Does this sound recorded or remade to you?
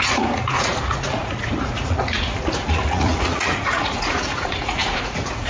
remade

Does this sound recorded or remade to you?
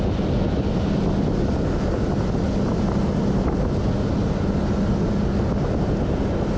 recorded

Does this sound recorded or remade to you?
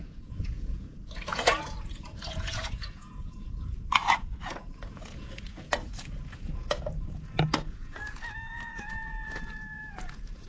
remade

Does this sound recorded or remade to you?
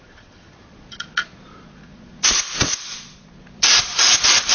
remade